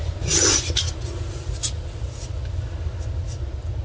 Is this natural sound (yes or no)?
yes